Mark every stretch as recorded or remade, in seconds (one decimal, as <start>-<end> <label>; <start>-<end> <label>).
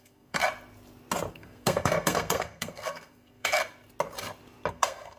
0.0-0.4 remade; 0.4-1.3 recorded; 1.3-3.6 remade; 3.6-4.7 recorded; 4.7-5.2 remade